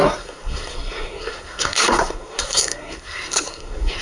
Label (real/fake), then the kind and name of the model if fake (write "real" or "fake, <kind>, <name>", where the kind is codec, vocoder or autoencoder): fake, codec, SNAC